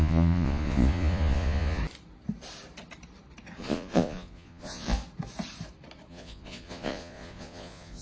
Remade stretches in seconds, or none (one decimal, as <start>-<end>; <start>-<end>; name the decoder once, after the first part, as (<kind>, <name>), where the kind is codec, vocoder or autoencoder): 0.0-1.8 (vocoder, Vocos); 3.6-5.0; 6.1-8.0